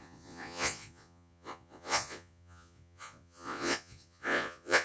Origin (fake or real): fake